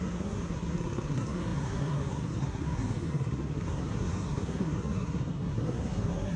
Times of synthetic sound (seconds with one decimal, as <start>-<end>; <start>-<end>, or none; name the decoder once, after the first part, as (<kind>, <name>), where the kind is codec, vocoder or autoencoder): 0.0-6.4 (codec, SNAC)